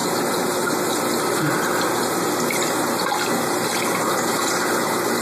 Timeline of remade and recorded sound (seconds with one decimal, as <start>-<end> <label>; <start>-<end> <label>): 0.0-5.2 recorded